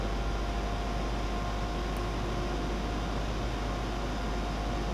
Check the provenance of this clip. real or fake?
real